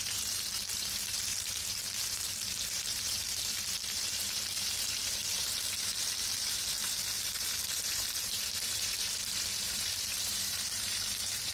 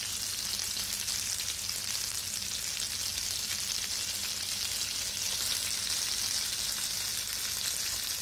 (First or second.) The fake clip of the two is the first